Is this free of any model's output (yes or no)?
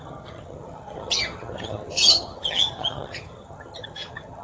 no